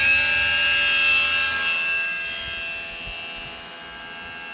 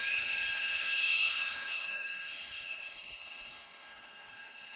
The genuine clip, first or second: first